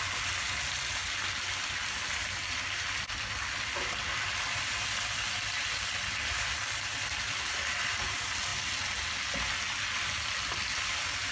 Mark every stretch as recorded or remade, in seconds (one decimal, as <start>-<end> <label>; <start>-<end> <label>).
0.0-11.3 recorded